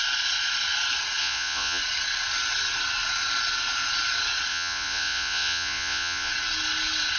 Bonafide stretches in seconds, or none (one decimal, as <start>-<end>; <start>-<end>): 0.0-1.2; 1.8-4.5; 6.3-7.2